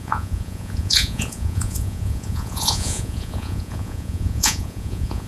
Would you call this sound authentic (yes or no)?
no